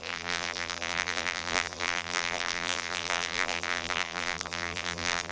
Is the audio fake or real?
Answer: fake